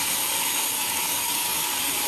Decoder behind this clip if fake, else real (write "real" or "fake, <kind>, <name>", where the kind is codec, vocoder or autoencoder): fake, codec, DAC